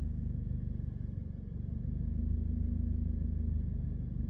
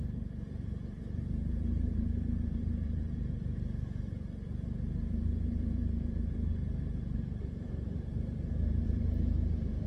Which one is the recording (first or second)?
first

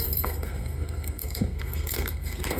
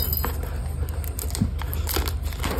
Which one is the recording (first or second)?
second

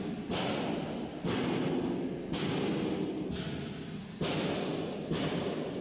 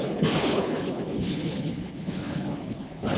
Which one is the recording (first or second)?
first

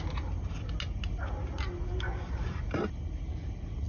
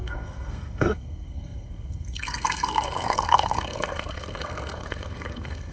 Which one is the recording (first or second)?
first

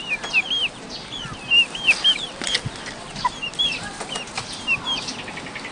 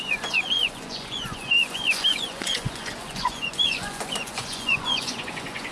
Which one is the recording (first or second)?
first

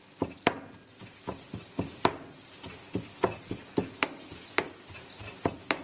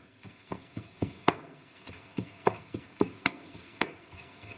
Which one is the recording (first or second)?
first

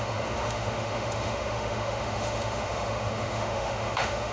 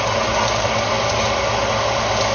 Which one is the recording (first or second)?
second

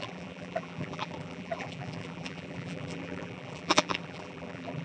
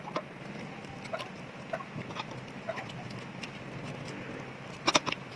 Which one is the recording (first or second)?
second